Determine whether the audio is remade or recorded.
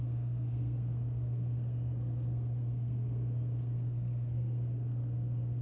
remade